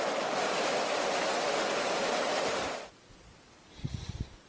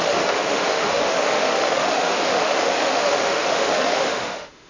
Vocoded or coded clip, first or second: second